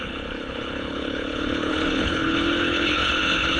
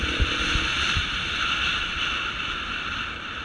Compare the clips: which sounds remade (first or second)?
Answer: first